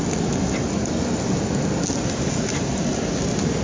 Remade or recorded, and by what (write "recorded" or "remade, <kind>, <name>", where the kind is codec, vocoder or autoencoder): recorded